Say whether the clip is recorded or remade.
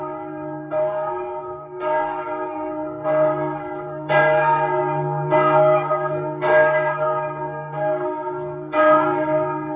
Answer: remade